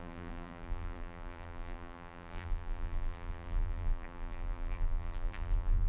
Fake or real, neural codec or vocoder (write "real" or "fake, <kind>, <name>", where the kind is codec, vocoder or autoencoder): fake, vocoder, BigVGAN v2